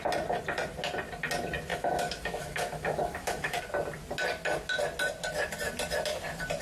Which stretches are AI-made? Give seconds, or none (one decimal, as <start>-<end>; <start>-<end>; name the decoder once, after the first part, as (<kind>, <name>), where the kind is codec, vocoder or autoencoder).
1.7-3.6 (autoencoder, DAC-VAE)